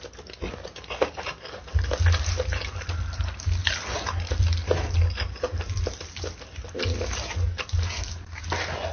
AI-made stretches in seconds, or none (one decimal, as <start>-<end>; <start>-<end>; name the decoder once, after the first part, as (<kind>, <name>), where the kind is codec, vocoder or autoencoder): none